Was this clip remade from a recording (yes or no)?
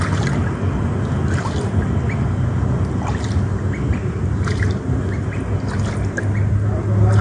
no